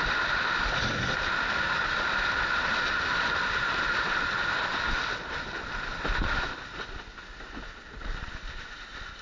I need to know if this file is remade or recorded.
recorded